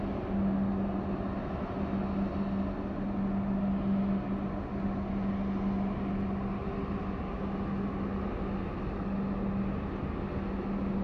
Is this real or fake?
real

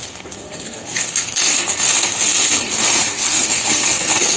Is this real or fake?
fake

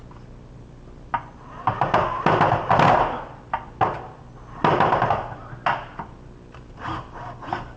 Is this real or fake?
real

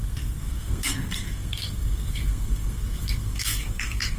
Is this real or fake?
fake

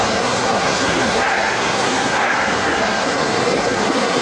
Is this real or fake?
fake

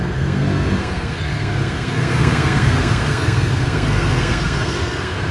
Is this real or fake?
fake